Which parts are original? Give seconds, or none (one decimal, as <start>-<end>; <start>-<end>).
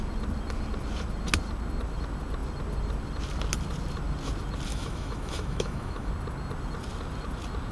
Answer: 0.0-4.7; 6.1-7.7